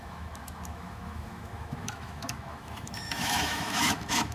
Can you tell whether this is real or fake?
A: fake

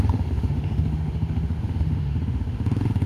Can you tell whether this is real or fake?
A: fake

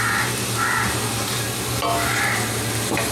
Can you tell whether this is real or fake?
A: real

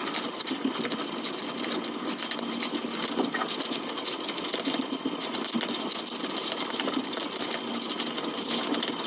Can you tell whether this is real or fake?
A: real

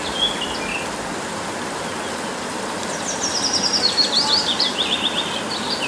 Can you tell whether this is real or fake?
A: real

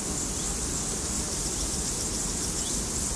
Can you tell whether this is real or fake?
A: real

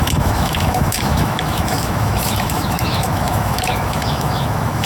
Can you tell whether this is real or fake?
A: fake